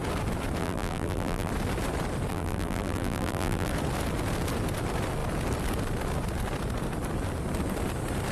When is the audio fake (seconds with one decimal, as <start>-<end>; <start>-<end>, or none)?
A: 0.6-1.5; 2.3-3.7